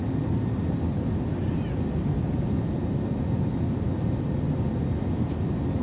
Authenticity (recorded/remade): recorded